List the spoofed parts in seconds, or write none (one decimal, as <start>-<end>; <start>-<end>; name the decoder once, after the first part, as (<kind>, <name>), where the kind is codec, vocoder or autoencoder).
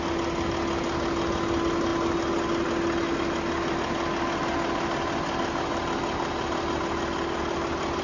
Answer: none